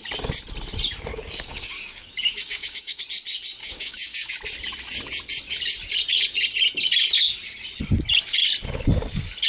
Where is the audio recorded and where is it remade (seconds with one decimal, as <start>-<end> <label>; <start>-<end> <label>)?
0.0-1.1 recorded; 1.1-3.0 remade; 3.0-3.6 recorded; 3.6-4.3 remade; 4.3-9.5 recorded